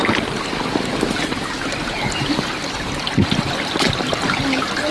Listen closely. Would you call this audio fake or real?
real